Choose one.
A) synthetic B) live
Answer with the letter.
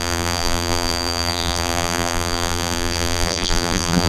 A